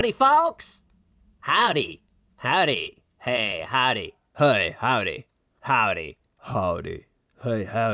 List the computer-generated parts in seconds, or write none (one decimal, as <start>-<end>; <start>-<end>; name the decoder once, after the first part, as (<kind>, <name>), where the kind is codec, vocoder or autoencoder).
0.0-3.7 (vocoder, WaveNeXt)